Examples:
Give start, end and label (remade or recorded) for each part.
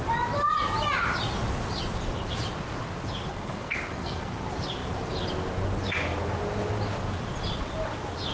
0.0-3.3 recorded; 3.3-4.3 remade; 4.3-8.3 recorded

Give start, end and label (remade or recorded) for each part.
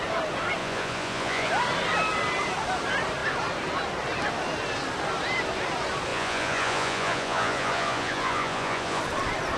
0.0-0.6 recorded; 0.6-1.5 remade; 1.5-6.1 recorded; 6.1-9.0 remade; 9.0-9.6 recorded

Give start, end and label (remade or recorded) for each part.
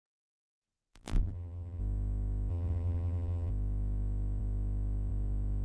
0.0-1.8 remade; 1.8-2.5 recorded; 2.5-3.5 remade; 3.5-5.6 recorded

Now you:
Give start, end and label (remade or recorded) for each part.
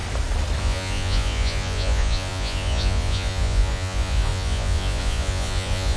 0.0-0.6 recorded; 0.6-6.0 remade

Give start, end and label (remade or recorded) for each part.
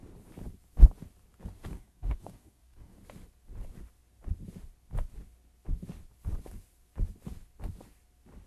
0.0-1.6 recorded; 1.6-3.0 remade; 3.0-8.5 recorded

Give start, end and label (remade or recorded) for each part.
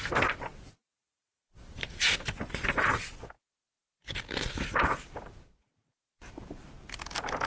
0.0-0.5 recorded; 0.5-2.1 remade; 2.1-3.8 recorded; 3.8-6.9 remade; 6.9-7.5 recorded